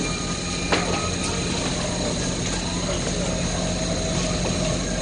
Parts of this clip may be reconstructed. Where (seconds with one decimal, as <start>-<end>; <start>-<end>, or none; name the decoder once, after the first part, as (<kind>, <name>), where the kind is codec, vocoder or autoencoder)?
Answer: none